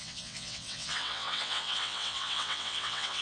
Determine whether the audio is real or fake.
fake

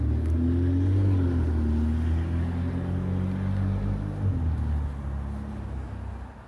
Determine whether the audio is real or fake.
real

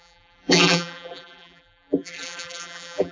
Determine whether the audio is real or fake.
fake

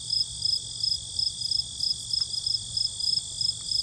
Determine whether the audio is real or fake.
real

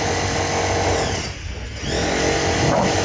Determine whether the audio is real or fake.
real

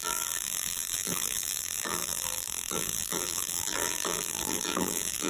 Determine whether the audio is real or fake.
fake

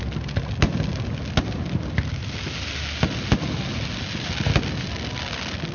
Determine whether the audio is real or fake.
real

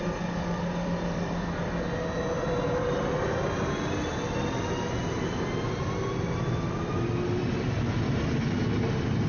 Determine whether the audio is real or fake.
real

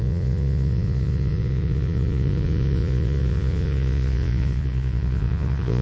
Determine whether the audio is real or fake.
fake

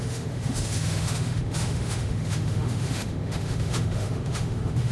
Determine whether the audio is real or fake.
fake